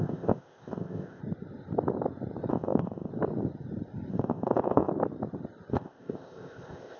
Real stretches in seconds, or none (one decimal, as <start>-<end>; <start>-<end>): 1.2-2.5; 3.1-4.1; 4.9-5.7